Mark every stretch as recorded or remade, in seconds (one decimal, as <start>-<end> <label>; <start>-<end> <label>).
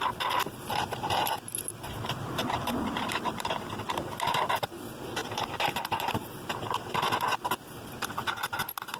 0.0-2.3 recorded; 2.3-3.7 remade; 3.7-5.2 recorded; 5.2-6.7 remade; 6.7-7.3 recorded; 7.3-8.1 remade; 8.1-9.0 recorded